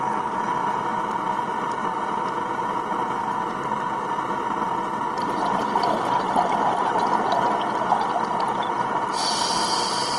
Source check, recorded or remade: recorded